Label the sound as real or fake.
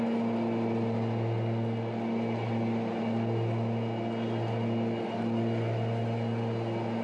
real